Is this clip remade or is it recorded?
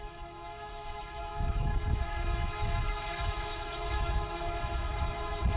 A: remade